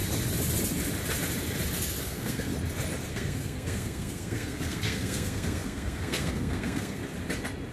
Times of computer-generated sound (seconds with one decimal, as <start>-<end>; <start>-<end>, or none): 2.0-2.5; 3.1-7.0